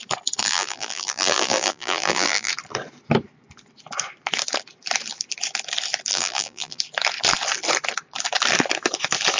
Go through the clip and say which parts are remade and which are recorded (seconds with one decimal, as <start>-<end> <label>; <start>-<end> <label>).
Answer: 0.0-0.4 recorded; 0.4-2.5 remade; 2.5-6.1 recorded; 6.1-6.8 remade; 6.8-9.4 recorded